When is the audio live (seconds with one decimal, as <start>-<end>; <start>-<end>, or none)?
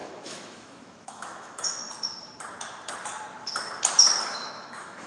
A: 1.8-4.2